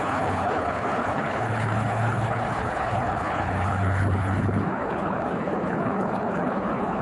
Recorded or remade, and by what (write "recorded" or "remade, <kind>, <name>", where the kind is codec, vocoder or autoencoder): remade, codec, HILCodec